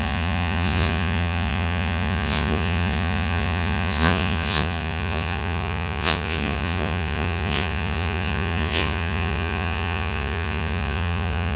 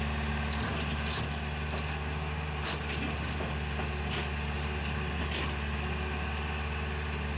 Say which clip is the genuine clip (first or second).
second